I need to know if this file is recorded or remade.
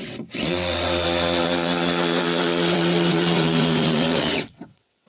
remade